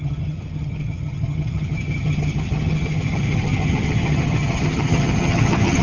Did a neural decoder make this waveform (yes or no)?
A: yes